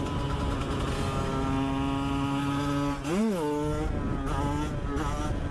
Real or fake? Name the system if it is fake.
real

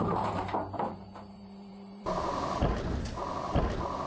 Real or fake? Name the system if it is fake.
fake, vocoder, BigVGAN v2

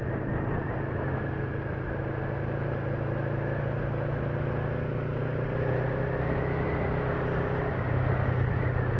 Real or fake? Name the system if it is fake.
real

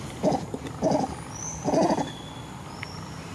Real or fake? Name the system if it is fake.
real